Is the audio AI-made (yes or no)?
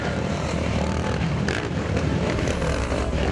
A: yes